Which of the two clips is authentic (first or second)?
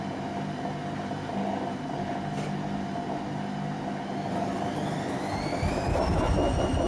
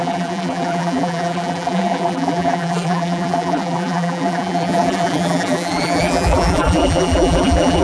first